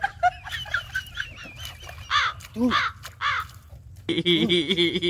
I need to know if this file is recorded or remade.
recorded